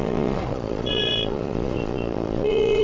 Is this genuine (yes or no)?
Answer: no